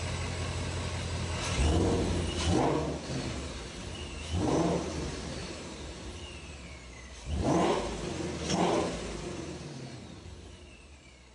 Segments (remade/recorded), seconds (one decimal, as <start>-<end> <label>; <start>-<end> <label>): 0.0-3.8 recorded; 3.8-5.0 remade; 5.0-5.4 recorded; 5.4-7.5 remade; 7.5-11.3 recorded